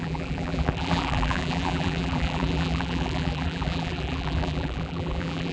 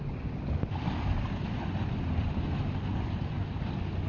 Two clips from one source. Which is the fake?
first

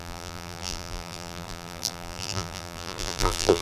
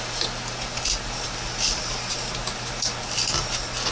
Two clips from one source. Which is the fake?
first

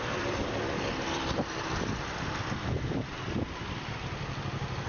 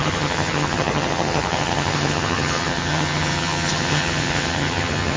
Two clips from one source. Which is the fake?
second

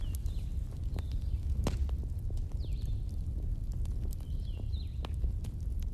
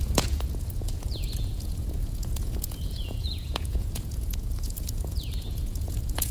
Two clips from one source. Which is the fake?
second